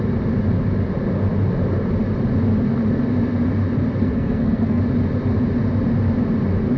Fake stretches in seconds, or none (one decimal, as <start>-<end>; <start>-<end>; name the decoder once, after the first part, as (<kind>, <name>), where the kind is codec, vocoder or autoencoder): 4.0-4.8 (codec, SNAC)